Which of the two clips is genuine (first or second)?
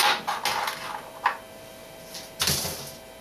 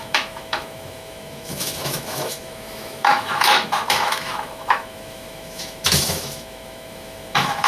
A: first